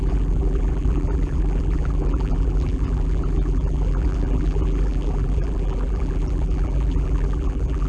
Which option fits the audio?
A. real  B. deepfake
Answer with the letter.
B